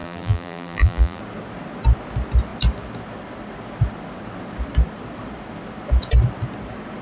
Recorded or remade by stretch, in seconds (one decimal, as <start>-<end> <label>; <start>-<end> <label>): 0.0-1.2 remade; 1.2-7.0 recorded